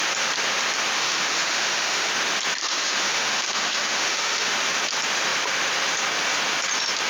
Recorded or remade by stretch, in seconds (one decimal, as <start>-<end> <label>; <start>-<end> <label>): 0.0-1.0 recorded; 1.0-2.1 remade; 2.1-2.6 recorded; 2.6-4.5 remade; 4.5-7.1 recorded